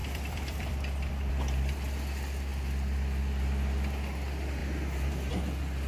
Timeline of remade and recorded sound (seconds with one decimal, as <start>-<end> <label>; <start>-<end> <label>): 0.0-1.3 remade; 1.3-5.9 recorded